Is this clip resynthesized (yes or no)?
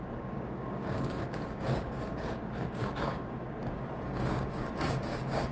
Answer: yes